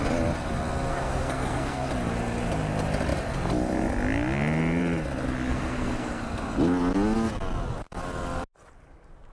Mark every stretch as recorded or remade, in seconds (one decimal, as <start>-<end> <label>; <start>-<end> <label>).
0.0-0.9 recorded; 0.9-1.9 remade; 1.9-5.5 recorded; 5.5-6.2 remade; 6.2-9.3 recorded